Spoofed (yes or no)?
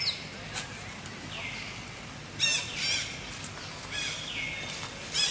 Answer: no